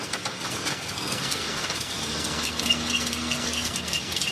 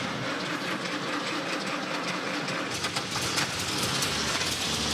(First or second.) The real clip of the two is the second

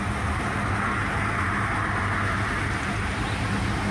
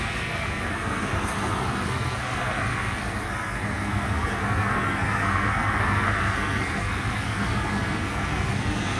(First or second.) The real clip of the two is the first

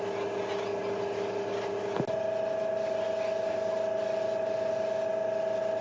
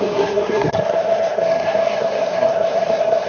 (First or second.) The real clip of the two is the first